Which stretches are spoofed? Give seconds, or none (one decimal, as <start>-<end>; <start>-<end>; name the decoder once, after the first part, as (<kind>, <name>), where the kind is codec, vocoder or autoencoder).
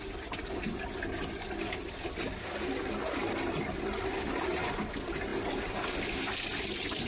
none